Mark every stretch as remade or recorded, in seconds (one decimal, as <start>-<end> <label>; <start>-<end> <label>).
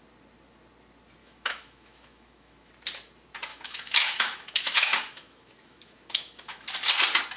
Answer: 0.0-1.2 recorded; 1.2-2.7 remade; 2.7-3.5 recorded; 3.5-6.7 remade; 6.7-7.4 recorded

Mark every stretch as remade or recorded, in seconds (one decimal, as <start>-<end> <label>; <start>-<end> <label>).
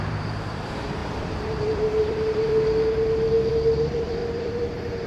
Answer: 0.0-2.5 remade; 2.5-3.5 recorded; 3.5-5.1 remade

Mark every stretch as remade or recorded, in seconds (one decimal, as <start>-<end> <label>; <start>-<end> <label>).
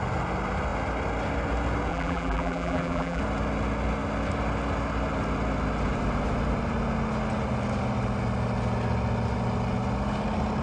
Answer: 0.0-1.9 recorded; 1.9-3.2 remade; 3.2-10.6 recorded